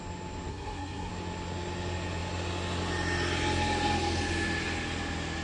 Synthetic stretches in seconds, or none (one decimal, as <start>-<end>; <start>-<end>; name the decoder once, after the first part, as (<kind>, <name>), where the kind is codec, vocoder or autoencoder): 0.5-1.1 (codec, SNAC)